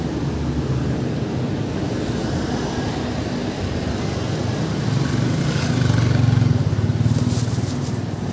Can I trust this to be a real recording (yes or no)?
yes